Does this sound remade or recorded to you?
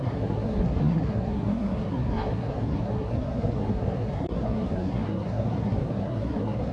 remade